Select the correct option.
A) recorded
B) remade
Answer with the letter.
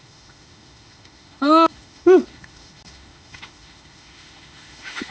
B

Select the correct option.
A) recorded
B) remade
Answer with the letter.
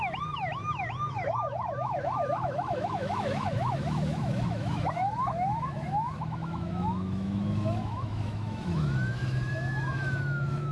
B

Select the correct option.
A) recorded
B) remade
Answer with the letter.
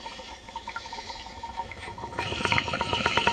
B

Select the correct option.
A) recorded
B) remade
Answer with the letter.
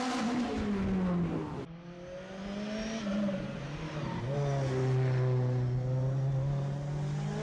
A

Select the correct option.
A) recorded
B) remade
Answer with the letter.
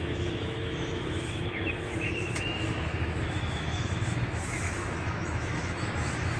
B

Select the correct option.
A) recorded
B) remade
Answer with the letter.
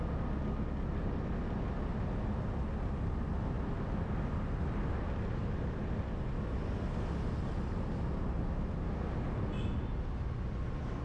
A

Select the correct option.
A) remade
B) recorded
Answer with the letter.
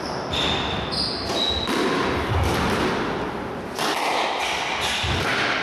B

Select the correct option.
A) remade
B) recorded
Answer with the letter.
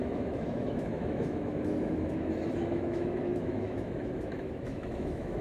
A